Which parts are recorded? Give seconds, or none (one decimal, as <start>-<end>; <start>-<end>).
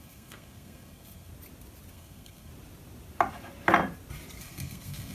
1.3-1.9; 2.5-4.4